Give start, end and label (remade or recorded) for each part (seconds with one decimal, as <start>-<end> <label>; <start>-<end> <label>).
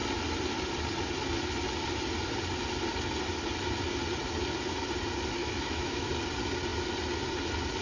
0.0-5.4 recorded; 5.4-6.1 remade; 6.1-7.8 recorded